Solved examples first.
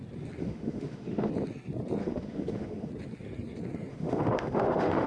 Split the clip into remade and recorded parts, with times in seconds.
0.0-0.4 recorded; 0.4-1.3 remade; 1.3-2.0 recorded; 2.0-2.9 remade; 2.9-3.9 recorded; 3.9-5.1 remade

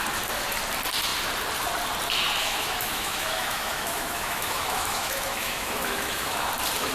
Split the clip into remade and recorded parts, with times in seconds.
0.0-2.4 recorded; 2.4-6.5 remade; 6.5-6.9 recorded